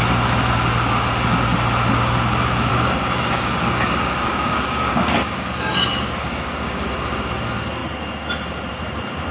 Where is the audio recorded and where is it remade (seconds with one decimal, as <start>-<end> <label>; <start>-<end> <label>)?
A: 0.0-2.7 recorded; 2.7-6.9 remade; 6.9-9.3 recorded